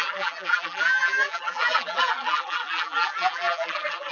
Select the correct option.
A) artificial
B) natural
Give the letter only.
A